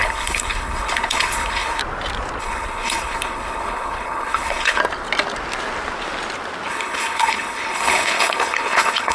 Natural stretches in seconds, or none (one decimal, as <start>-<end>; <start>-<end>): 1.8-2.4; 4.8-6.7